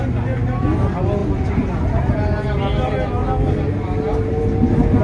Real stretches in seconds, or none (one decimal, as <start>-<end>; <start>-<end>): 0.0-5.0